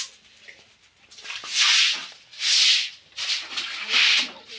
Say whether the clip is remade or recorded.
recorded